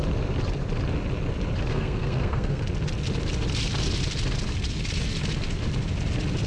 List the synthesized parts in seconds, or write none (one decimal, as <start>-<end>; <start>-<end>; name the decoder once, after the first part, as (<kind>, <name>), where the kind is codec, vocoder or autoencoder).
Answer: 1.7-2.6 (codec, SNAC)